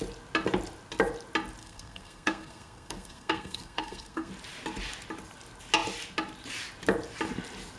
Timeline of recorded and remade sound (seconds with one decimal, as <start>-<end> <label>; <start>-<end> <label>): 0.0-1.6 recorded; 1.6-4.3 remade; 4.3-7.8 recorded